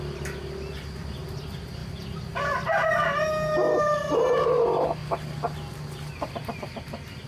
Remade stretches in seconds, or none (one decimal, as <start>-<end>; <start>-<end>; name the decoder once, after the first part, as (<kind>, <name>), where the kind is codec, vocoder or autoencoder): none